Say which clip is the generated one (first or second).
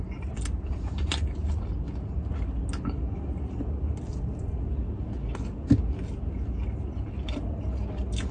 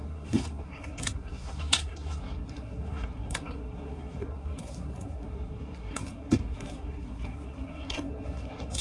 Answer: second